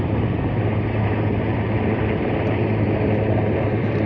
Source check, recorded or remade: remade